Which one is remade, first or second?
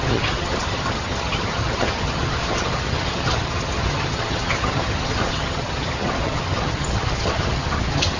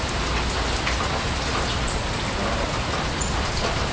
first